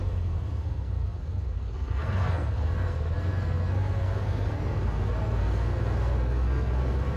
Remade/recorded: remade